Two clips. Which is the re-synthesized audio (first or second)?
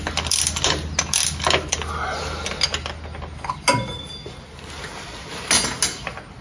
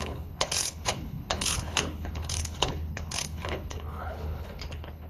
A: second